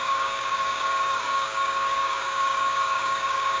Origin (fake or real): fake